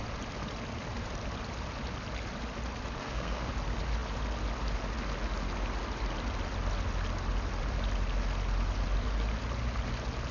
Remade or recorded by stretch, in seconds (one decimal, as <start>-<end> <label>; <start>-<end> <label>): 0.0-3.0 recorded; 3.0-3.5 remade; 3.5-10.3 recorded